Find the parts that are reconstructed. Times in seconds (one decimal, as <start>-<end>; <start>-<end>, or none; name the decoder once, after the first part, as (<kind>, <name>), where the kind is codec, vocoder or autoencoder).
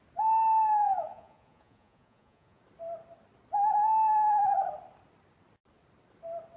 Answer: 0.8-2.6 (vocoder, Vocos)